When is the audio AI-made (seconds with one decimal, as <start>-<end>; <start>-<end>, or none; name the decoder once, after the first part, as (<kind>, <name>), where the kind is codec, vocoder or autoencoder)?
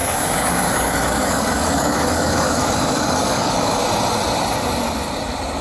0.0-3.8 (codec, DAC)